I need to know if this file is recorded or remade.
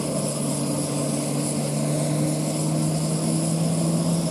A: recorded